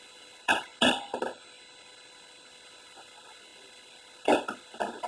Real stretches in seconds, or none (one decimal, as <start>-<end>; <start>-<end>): 0.7-2.5